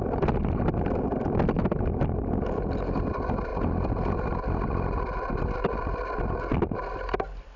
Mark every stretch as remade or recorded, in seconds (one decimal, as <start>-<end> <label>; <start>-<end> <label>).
0.0-7.6 recorded